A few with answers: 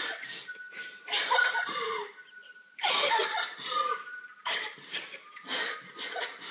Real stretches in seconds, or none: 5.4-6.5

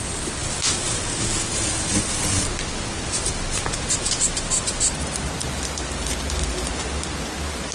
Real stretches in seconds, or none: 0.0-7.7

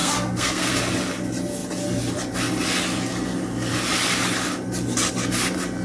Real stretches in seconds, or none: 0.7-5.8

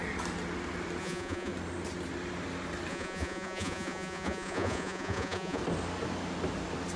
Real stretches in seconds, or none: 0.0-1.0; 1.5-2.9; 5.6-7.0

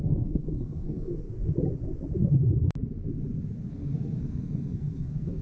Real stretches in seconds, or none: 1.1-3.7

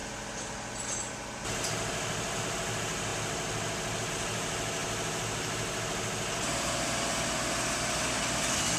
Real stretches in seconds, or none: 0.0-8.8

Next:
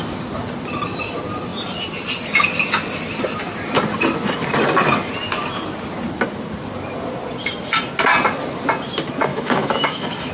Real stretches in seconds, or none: 0.0-9.3